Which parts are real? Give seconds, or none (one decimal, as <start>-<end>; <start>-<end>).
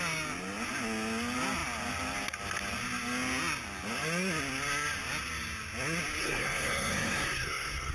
0.0-6.2